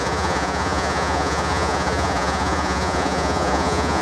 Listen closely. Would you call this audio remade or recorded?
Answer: remade